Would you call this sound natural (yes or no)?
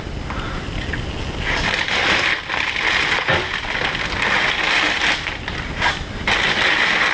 yes